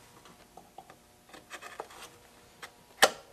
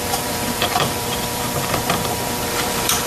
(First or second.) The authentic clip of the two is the first